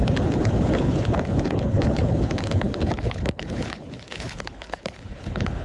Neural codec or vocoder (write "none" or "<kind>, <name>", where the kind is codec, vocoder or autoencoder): codec, HILCodec